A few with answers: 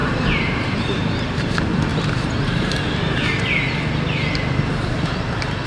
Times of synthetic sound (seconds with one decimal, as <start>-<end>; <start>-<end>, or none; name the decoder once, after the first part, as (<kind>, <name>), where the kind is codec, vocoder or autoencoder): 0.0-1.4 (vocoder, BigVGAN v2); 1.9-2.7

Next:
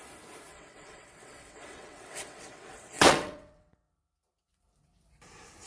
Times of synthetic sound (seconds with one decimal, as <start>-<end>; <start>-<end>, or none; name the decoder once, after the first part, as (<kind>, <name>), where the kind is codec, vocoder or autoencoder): 0.5-3.9 (vocoder, WaveNeXt)

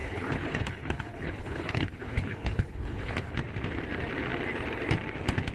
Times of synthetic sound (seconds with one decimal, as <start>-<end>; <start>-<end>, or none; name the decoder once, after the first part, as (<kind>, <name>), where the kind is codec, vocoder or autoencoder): 0.0-3.3 (codec, HILCodec)